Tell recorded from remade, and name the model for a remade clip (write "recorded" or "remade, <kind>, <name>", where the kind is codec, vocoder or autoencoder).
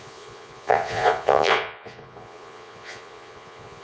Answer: remade, vocoder, Vocos